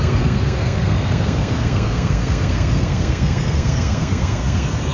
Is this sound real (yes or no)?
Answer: no